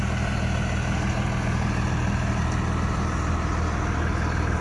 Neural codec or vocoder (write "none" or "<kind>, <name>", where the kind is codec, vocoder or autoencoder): none